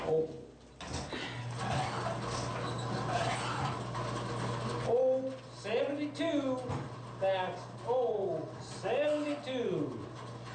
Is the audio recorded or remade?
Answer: recorded